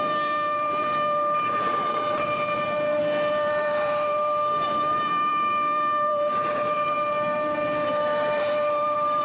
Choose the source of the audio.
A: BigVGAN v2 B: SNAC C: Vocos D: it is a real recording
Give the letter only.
A